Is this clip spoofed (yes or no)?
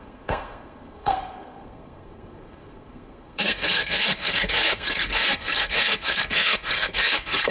yes